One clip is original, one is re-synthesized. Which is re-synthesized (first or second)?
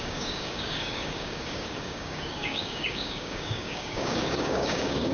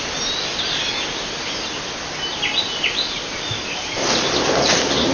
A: first